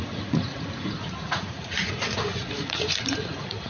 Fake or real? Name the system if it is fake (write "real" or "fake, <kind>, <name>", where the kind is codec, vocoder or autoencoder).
fake, vocoder, Vocos